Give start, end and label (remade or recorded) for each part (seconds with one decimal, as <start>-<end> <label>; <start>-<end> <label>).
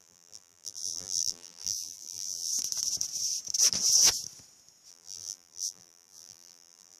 0.0-2.5 remade; 2.5-4.9 recorded; 4.9-7.0 remade